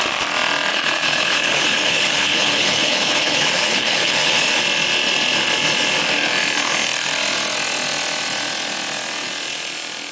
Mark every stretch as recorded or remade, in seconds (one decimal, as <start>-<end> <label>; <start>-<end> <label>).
0.0-0.7 recorded; 0.7-4.6 remade; 4.6-10.1 recorded